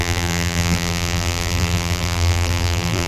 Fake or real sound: fake